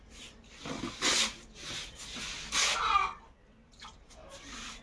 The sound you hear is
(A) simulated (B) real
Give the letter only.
B